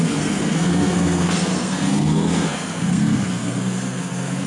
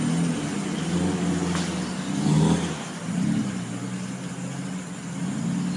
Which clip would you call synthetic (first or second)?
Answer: first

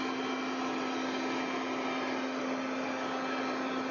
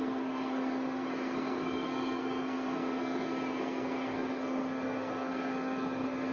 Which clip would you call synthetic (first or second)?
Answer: second